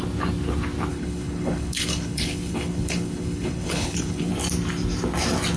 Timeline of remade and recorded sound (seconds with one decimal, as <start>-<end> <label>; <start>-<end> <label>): 0.0-0.9 recorded; 0.9-4.3 remade; 4.3-5.6 recorded

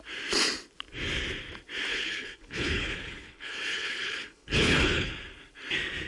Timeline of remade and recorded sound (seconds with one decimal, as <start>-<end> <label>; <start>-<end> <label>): 0.0-1.9 recorded; 1.9-5.1 remade; 5.1-6.1 recorded

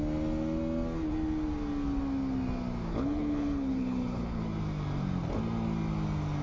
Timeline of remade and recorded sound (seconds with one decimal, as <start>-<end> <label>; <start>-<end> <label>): 0.0-2.9 recorded; 2.9-4.4 remade; 4.4-6.4 recorded

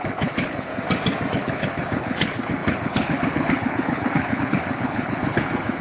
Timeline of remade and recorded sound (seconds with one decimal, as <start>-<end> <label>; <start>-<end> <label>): 0.0-0.7 remade; 0.7-1.3 recorded; 1.3-5.8 remade

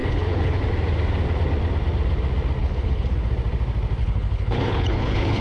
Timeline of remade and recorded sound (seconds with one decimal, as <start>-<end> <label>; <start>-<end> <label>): 0.0-0.6 remade; 0.6-2.6 recorded; 2.6-3.3 remade; 3.3-4.0 recorded; 4.0-5.4 remade

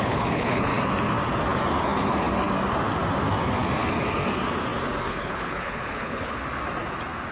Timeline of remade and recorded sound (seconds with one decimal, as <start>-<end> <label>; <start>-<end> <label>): 0.0-0.7 remade; 0.7-5.1 recorded; 5.1-6.4 remade; 6.4-7.3 recorded

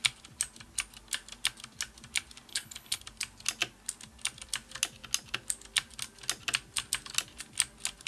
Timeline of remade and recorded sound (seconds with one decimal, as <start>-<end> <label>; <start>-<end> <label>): 0.0-2.5 recorded; 2.5-3.0 remade; 3.0-8.1 recorded

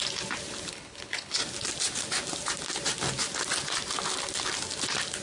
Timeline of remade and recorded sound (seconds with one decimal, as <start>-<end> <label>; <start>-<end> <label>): 0.0-0.7 recorded; 0.7-1.4 remade; 1.4-5.2 recorded